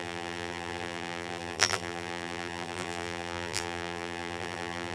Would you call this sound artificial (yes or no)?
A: yes